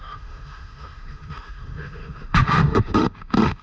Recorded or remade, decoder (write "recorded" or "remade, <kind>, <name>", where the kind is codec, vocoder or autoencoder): remade, autoencoder, DAC-VAE